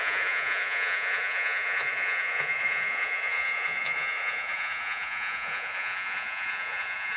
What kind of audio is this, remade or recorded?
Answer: remade